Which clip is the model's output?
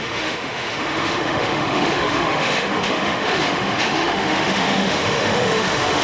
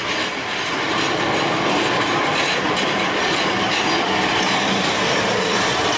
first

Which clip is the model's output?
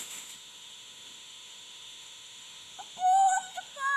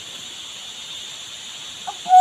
first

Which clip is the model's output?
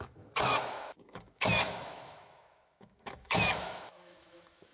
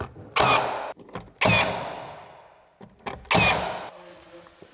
first